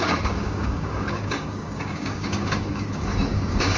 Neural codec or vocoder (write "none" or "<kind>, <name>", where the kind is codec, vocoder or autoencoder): codec, DAC